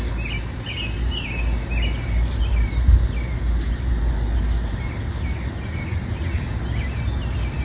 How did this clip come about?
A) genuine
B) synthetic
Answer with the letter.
A